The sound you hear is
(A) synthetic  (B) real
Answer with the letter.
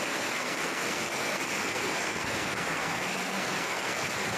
A